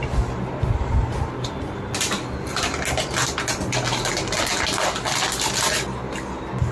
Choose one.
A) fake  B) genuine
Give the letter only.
B